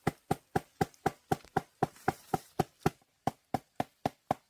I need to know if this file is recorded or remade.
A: recorded